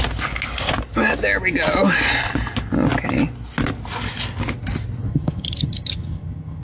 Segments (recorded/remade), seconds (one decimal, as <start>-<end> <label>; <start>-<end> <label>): 0.0-5.1 recorded; 5.1-6.6 remade